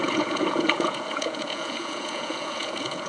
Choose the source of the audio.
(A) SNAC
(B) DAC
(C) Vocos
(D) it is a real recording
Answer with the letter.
C